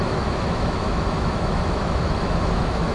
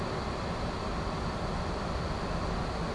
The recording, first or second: second